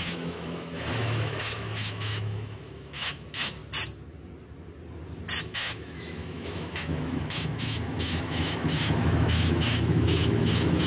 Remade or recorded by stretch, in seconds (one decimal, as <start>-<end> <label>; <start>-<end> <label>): 0.0-3.6 remade; 3.6-5.4 recorded; 5.4-10.9 remade